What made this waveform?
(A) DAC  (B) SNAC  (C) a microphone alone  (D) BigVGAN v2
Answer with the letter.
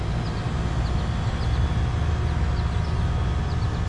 C